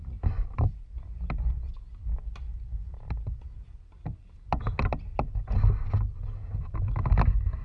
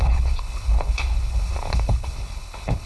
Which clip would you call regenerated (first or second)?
second